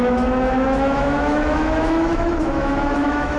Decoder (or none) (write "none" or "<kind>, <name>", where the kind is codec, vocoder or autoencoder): autoencoder, DAC-VAE